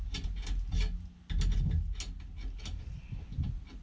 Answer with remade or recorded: recorded